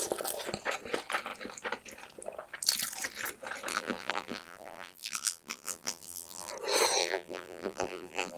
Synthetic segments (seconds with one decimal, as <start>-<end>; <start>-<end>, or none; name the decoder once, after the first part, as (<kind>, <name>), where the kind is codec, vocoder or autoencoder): 3.7-6.5 (vocoder, BigVGAN v2); 7.0-8.4

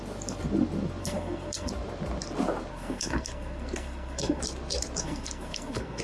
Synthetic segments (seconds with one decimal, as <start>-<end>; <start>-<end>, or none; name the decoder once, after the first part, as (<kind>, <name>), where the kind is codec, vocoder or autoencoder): 1.0-1.7 (codec, SNAC); 2.7-4.4; 5.0-6.0

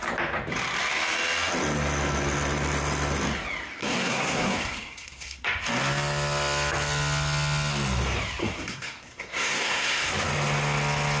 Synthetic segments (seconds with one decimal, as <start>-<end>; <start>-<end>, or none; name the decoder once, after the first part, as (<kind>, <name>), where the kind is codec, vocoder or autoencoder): 3.8-5.4 (codec, SNAC); 8.4-10.1

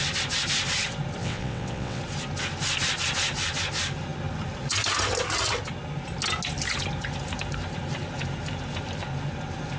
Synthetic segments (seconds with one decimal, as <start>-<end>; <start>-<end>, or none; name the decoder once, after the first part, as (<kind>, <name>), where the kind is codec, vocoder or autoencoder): 1.2-2.0 (vocoder, WaveNeXt)

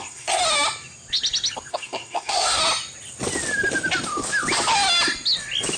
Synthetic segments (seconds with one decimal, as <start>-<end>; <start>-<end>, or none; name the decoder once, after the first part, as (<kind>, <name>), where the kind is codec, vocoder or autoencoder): 0.0-0.4 (codec, SNAC); 1.7-2.6

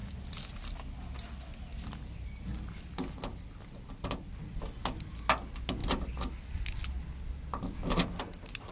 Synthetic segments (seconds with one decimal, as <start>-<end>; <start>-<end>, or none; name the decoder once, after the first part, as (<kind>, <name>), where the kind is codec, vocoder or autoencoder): none

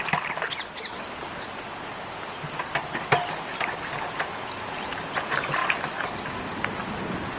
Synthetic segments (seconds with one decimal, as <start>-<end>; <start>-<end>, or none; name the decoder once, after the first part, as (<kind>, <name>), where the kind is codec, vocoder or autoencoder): 5.6-6.1 (vocoder, BigVGAN v2)